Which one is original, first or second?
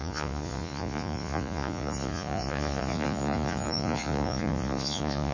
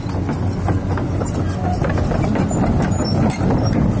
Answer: second